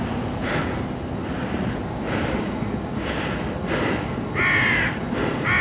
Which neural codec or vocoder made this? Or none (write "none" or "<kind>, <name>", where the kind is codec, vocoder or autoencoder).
none